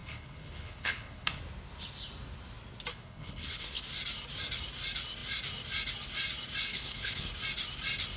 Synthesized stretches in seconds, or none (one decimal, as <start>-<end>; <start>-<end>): 0.0-1.4; 2.9-3.8; 6.7-7.3